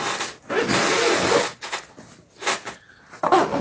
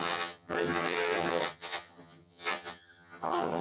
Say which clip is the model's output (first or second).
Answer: second